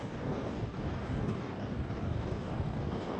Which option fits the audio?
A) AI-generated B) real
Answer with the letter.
A